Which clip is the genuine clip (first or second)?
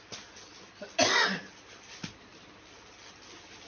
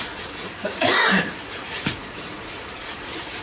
first